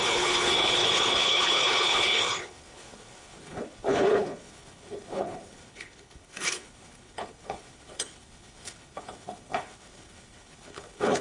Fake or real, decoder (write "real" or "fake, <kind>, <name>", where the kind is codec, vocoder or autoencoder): fake, codec, HILCodec